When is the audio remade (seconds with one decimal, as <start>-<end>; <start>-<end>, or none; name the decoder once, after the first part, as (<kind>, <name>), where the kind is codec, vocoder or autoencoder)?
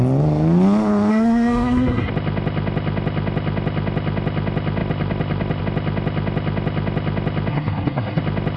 1.1-2.1 (codec, SNAC); 7.5-8.2